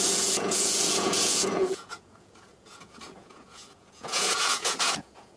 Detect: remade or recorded remade